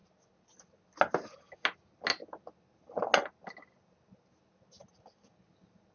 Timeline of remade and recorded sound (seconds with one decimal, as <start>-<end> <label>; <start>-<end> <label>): 0.0-5.9 recorded